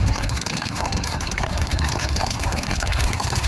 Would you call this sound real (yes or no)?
no